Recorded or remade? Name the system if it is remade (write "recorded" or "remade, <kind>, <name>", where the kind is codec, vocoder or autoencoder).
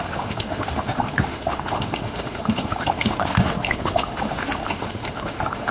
remade, autoencoder, DAC-VAE